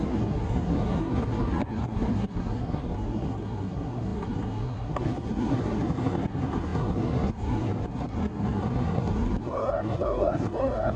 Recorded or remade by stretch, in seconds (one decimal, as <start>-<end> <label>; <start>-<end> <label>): 0.0-11.0 remade